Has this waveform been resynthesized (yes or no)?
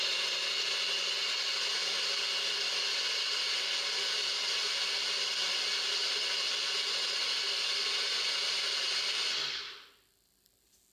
no